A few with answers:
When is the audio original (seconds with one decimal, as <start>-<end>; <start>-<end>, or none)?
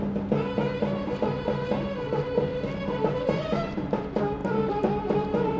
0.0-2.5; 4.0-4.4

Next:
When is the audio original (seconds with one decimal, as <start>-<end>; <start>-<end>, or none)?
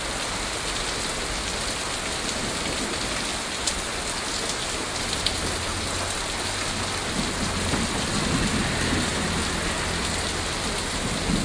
0.0-11.4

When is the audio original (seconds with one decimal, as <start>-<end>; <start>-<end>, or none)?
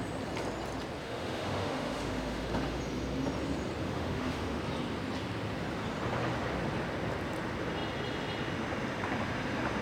0.0-1.0; 2.8-3.8; 4.6-9.8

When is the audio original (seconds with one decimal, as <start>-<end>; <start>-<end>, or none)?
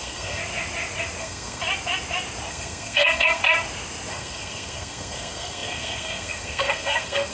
0.4-1.2; 1.6-2.5; 3.4-4.1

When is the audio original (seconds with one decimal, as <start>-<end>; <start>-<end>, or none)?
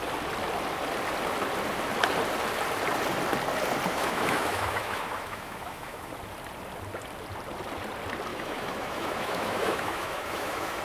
0.0-3.9; 6.1-8.3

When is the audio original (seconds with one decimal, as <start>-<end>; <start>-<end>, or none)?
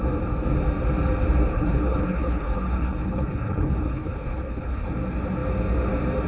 0.0-1.5; 4.9-6.3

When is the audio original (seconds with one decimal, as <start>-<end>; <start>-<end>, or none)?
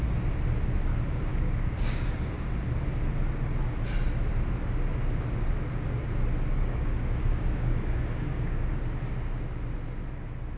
0.0-1.3; 2.4-6.5; 8.7-10.6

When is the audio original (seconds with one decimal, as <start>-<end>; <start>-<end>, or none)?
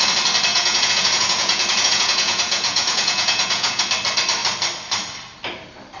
0.0-0.5; 3.8-6.0